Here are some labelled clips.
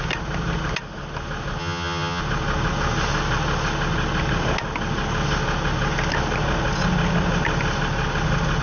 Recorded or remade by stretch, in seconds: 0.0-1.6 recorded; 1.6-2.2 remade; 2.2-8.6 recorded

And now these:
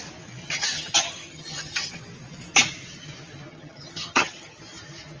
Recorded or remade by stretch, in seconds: 0.0-0.4 recorded; 0.4-1.9 remade; 1.9-3.5 recorded; 3.5-4.6 remade; 4.6-5.2 recorded

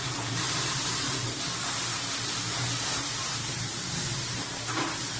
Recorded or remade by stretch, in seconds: 0.0-1.4 remade; 1.4-1.9 recorded; 1.9-5.2 remade

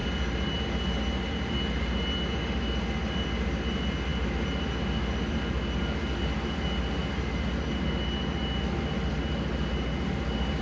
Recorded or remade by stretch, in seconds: 0.0-10.6 recorded

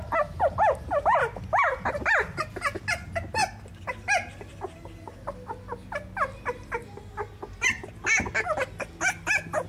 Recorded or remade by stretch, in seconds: 0.0-9.7 recorded

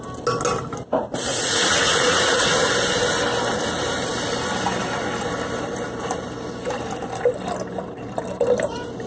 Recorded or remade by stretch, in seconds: 0.0-1.3 recorded; 1.3-2.7 remade; 2.7-9.1 recorded